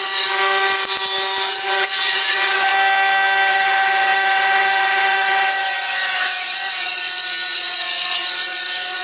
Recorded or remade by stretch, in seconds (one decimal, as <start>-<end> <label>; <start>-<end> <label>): 0.0-0.4 remade; 0.4-1.5 recorded; 1.5-2.7 remade; 2.7-3.5 recorded; 3.5-9.0 remade